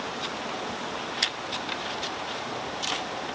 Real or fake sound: real